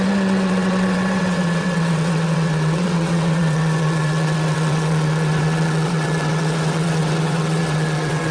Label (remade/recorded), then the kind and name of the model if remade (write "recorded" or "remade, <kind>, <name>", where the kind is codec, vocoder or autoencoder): remade, vocoder, WaveNeXt